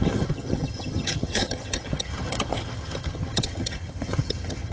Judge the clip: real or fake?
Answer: fake